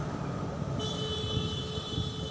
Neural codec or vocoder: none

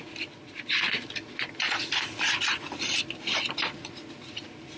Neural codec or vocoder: none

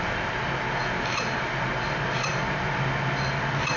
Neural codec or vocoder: none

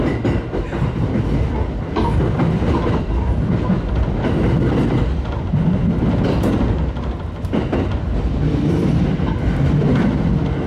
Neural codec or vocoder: none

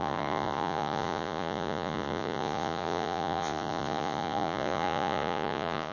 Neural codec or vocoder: vocoder, Vocos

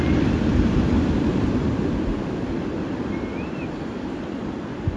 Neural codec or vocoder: vocoder, BigVGAN v2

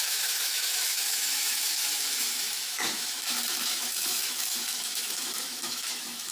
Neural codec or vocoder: autoencoder, DAC-VAE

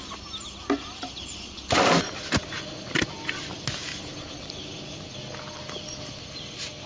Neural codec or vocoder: none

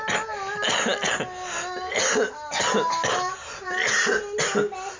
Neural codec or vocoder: none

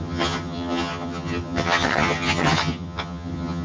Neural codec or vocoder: vocoder, HiFi-GAN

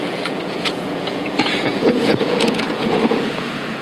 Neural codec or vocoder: vocoder, Vocos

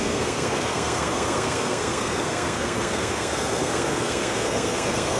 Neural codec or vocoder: codec, SNAC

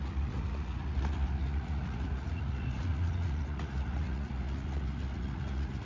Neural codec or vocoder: vocoder, Vocos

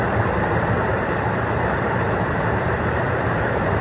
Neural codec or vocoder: vocoder, BigVGAN v2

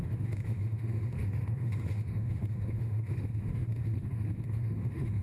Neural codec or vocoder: autoencoder, DAC-VAE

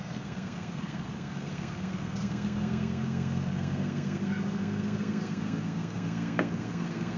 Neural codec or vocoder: codec, SNAC